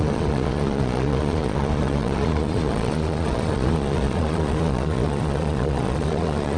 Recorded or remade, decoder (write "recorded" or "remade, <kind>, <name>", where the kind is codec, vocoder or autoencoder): remade, vocoder, Vocos